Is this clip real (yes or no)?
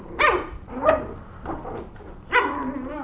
no